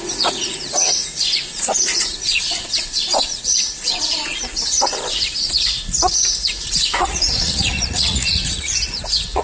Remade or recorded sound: remade